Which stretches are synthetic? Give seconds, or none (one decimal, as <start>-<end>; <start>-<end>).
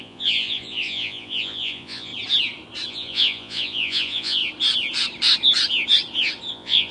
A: 0.0-2.1; 2.9-4.4; 6.5-6.9